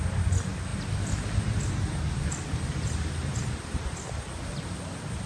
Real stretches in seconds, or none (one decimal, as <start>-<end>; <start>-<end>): 0.0-5.3